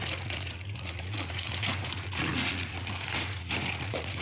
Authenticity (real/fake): fake